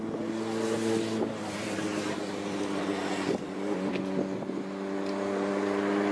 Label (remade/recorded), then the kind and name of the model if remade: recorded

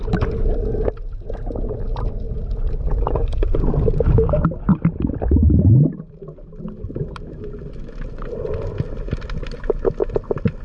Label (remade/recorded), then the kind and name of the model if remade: recorded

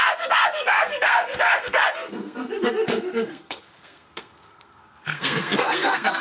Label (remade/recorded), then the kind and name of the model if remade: remade, codec, SNAC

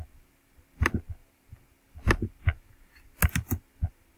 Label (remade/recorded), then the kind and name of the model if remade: recorded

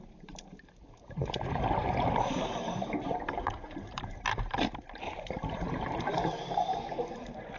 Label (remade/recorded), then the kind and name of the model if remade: remade, vocoder, BigVGAN v2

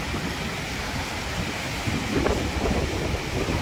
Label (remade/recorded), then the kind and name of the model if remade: recorded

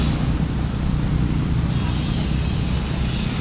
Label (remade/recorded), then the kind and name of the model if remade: recorded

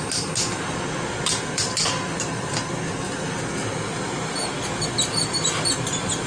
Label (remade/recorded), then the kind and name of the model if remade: recorded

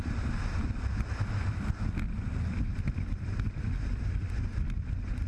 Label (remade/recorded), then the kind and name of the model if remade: recorded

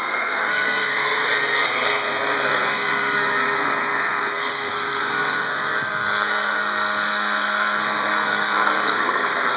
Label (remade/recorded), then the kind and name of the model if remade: remade, codec, SNAC